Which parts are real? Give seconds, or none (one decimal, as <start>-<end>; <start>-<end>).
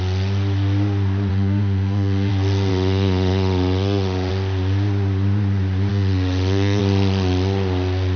0.0-1.3; 2.3-2.7; 4.3-5.9; 6.8-8.2